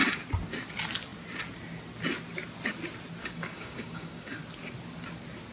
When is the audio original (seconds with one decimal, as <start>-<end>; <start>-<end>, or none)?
0.0-3.2; 4.4-5.5